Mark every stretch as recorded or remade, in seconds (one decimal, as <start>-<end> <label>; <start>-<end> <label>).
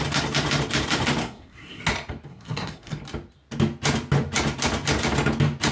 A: 0.0-1.2 recorded; 1.2-1.8 remade; 1.8-2.3 recorded; 2.3-3.0 remade; 3.0-5.7 recorded